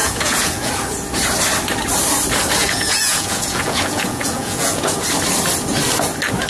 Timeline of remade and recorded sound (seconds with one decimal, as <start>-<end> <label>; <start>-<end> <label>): 0.0-0.7 remade; 0.7-2.6 recorded; 2.6-4.8 remade; 4.8-6.5 recorded